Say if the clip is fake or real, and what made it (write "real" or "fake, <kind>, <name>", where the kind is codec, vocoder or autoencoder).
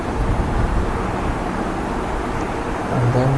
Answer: real